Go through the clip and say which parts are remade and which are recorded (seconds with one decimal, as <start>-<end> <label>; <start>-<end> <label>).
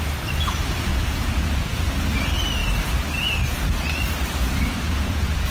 0.0-0.9 recorded; 0.9-1.9 remade; 1.9-4.4 recorded; 4.4-5.5 remade